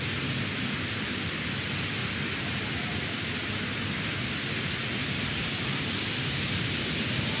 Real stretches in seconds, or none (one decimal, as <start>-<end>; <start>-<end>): 0.0-2.0; 3.5-5.0; 5.8-7.4